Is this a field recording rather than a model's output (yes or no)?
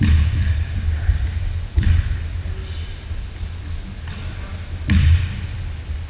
yes